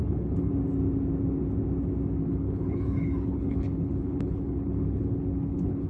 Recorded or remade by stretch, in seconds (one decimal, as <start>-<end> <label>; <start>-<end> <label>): 0.0-0.5 remade; 0.5-2.2 recorded; 2.2-5.9 remade

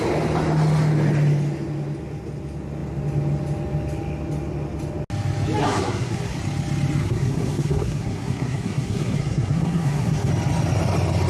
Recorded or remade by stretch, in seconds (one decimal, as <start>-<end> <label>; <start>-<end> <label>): 0.0-5.6 recorded; 5.6-6.4 remade; 6.4-7.0 recorded; 7.0-10.3 remade; 10.3-11.3 recorded